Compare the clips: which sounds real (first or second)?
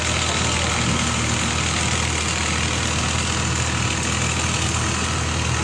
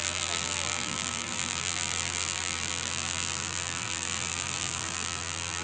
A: first